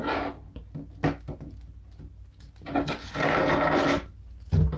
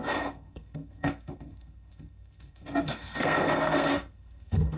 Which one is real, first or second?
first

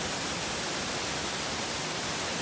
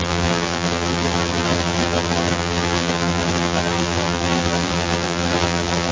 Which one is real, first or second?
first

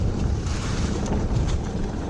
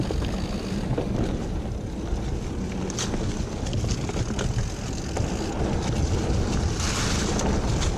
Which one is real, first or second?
second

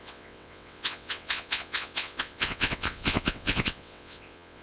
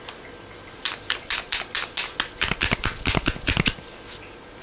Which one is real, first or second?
second